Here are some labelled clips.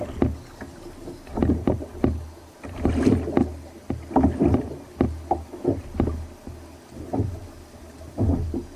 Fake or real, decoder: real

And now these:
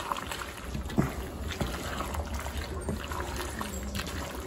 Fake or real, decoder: real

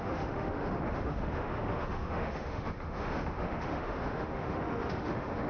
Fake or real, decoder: fake, autoencoder, DAC-VAE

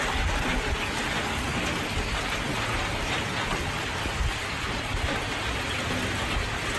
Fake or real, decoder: real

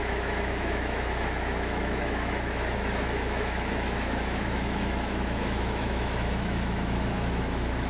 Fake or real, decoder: fake, autoencoder, DAC-VAE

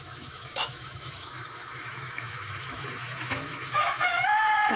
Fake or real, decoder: fake, autoencoder, DAC-VAE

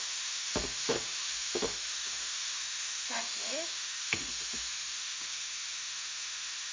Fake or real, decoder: fake, autoencoder, DAC-VAE